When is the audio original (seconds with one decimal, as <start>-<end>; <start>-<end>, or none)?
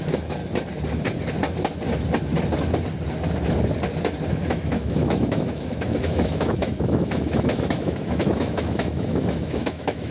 0.4-4.3